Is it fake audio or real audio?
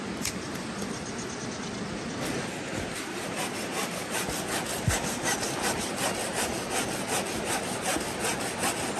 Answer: real